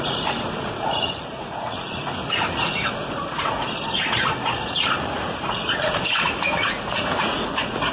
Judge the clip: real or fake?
fake